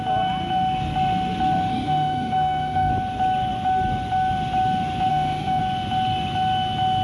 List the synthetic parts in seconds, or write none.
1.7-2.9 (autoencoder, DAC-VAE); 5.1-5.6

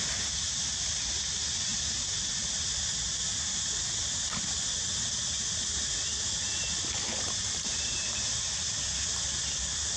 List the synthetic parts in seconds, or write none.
none

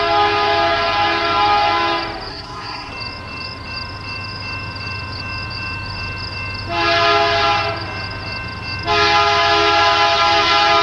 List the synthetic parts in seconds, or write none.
2.3-2.9 (codec, SNAC)

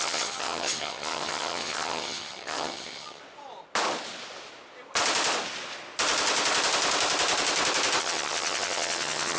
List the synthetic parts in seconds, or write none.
0.0-3.2 (vocoder, HiFi-GAN); 8.0-9.4

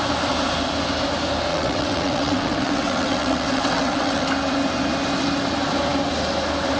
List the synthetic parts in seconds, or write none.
1.5-4.3 (vocoder, WaveNeXt)

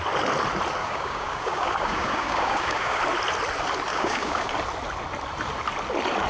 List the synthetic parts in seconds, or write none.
0.8-3.0 (codec, DAC); 3.9-4.5